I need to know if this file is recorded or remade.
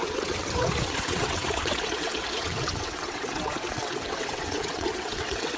remade